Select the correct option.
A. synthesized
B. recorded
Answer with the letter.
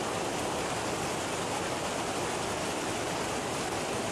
B